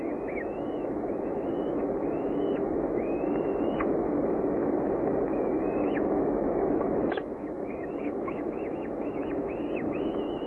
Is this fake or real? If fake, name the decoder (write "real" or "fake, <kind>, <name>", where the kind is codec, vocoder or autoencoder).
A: fake, autoencoder, DAC-VAE